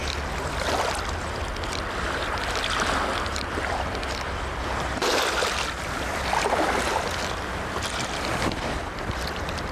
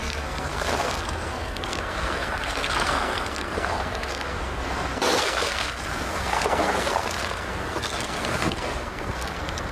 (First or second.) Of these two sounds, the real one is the first